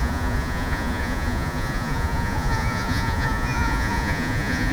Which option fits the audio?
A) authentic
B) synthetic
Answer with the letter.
B